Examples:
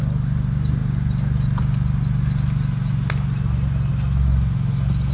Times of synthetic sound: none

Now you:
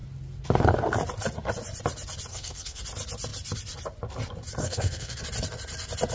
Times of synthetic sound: 2.3-2.8 (codec, SNAC); 4.6-5.2